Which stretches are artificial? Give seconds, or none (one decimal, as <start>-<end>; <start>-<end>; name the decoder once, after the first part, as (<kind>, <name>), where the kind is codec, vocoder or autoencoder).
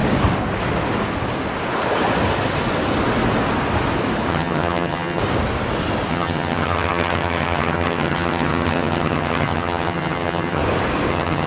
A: 4.3-5.2 (vocoder, HiFi-GAN); 6.1-10.6; 11.1-11.5